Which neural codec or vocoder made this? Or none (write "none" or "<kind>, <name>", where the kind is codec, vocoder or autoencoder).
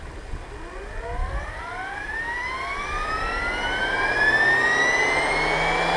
none